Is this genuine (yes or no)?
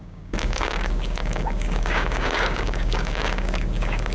no